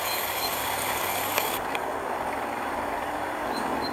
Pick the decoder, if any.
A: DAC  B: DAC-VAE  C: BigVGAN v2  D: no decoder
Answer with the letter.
A